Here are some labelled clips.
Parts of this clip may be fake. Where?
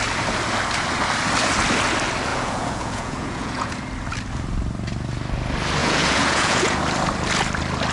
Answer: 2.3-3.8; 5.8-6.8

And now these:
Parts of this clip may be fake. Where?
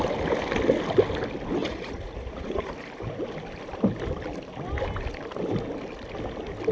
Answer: 1.6-2.7